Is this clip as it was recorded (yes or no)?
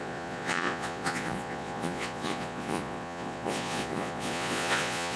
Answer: no